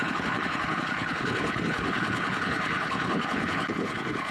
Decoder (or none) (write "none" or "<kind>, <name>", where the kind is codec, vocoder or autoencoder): codec, HILCodec